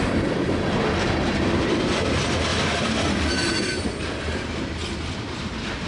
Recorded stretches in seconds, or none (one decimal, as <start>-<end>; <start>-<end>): 0.0-5.9